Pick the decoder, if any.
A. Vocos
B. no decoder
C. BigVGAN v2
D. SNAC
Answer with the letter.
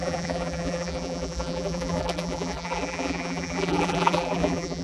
C